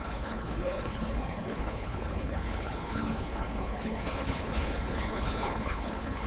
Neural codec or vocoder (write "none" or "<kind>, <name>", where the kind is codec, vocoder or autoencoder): codec, HILCodec